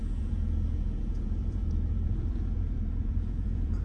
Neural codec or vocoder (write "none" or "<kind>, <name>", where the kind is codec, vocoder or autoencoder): vocoder, Vocos